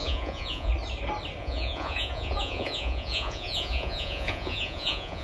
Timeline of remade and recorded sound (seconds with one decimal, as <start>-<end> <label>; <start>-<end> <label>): 0.0-0.7 remade; 0.7-1.4 recorded; 1.4-5.2 remade